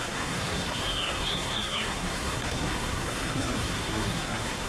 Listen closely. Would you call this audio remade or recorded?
remade